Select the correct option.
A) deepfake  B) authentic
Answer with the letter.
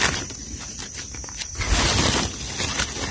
B